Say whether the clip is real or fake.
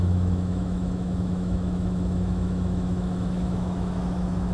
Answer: fake